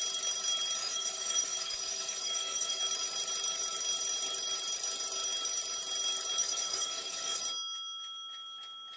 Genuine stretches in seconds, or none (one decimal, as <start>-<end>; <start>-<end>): 0.0-0.8; 2.8-6.4; 7.4-9.0